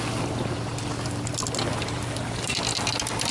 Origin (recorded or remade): recorded